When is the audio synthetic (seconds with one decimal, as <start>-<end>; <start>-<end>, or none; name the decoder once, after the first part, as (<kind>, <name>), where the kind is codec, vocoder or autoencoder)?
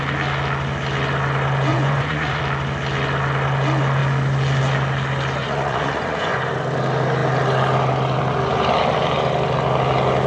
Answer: 1.7-2.4 (vocoder, Vocos); 5.4-6.4